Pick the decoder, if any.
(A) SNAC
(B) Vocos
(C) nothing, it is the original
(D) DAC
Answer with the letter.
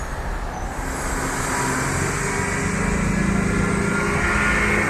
C